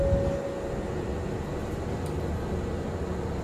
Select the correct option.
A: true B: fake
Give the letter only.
A